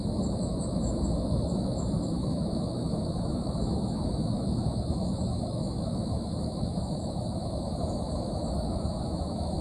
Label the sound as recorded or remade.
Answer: remade